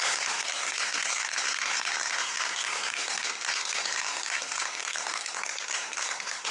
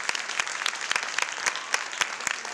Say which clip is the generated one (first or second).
first